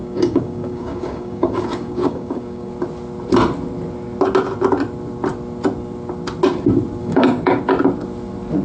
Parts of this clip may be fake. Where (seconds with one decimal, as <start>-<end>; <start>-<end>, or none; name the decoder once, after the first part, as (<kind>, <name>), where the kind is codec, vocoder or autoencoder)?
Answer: 0.0-2.7 (codec, DAC); 7.0-7.6